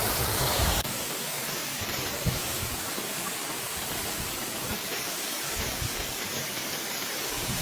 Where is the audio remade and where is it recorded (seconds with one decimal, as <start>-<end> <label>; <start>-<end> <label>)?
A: 0.0-7.6 remade